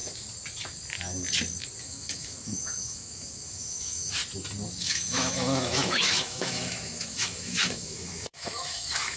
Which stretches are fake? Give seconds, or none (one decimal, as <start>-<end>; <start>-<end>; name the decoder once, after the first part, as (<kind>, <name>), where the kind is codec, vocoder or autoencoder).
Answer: 1.8-4.2 (autoencoder, DAC-VAE); 4.8-9.2